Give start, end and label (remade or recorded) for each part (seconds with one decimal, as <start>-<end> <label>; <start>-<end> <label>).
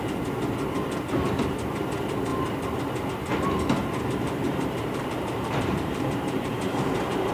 0.0-3.8 recorded; 3.8-7.3 remade